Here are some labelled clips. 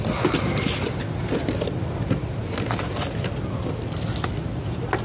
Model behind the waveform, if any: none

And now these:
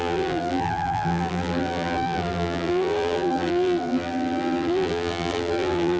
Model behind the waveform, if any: vocoder, BigVGAN v2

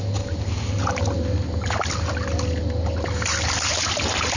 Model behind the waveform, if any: none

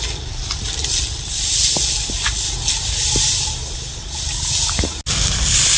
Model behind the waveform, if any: none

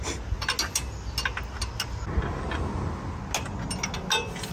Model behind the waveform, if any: none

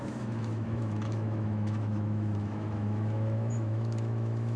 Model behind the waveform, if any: autoencoder, DAC-VAE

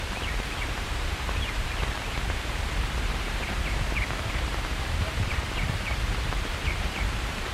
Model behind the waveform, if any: vocoder, BigVGAN v2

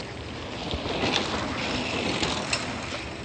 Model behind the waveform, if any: none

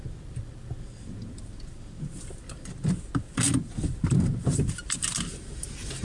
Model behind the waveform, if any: none